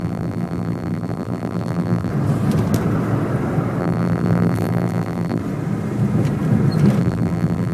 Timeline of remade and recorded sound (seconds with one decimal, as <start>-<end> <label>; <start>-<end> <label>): 0.0-2.1 remade; 2.1-3.8 recorded; 3.8-5.4 remade; 5.4-7.0 recorded; 7.0-7.7 remade